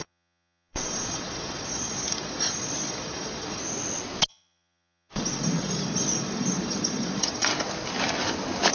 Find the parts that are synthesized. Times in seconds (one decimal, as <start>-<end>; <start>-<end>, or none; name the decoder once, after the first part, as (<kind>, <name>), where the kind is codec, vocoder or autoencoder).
0.0-3.6 (vocoder, Vocos); 4.3-7.5